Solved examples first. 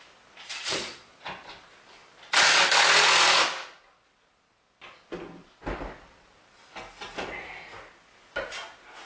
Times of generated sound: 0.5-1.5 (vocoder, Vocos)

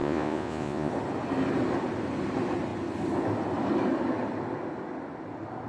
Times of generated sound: 0.0-0.9 (vocoder, Vocos)

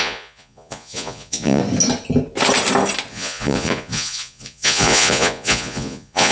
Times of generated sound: 0.0-1.6 (vocoder, Vocos); 3.1-6.3